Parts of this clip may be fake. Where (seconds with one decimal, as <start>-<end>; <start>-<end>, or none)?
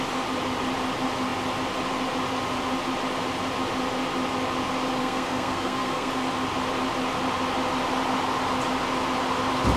5.0-6.1